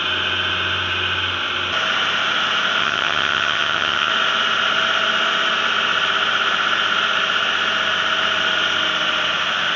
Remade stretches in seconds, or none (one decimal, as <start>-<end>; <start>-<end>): 2.8-4.1